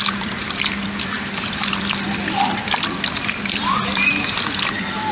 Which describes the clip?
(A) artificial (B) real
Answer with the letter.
A